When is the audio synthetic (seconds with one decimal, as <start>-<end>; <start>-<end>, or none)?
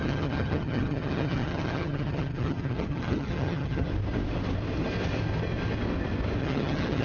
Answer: 0.0-3.9; 6.4-7.0